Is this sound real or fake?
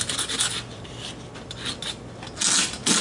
real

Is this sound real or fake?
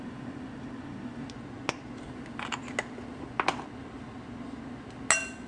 real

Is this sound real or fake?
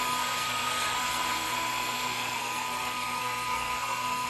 fake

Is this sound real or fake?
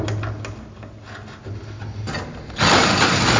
real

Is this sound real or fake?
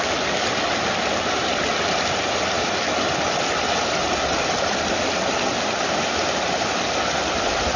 real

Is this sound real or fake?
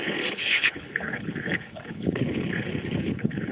fake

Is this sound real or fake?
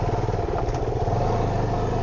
real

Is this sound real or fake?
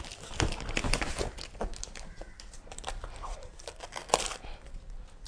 fake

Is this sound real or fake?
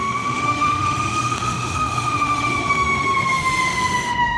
fake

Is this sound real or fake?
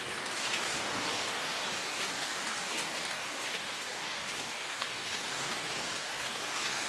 fake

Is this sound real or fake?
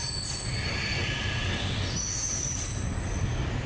real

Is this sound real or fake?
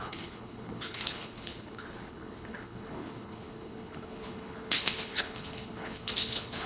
fake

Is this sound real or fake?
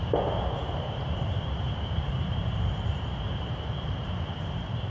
fake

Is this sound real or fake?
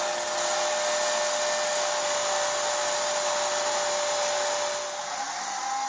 real